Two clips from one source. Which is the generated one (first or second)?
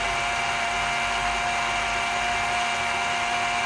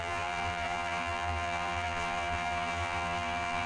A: second